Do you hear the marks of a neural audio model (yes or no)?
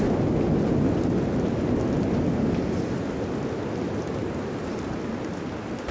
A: no